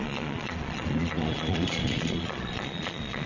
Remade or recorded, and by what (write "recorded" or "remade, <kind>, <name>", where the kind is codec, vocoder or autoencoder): remade, vocoder, Vocos